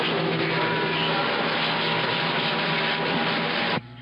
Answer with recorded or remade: recorded